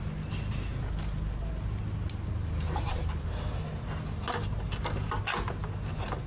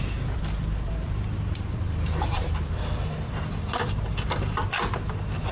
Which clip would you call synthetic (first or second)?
second